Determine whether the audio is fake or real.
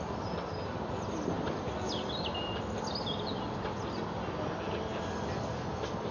real